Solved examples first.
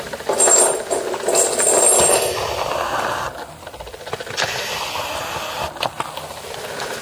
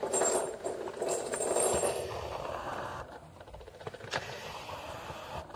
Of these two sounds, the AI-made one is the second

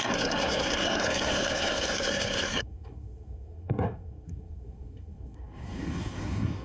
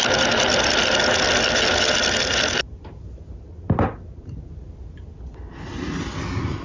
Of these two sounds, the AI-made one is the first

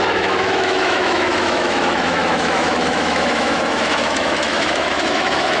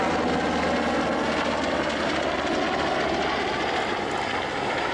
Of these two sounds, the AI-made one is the first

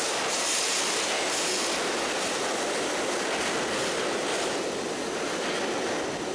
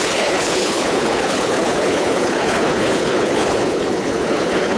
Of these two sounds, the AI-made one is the second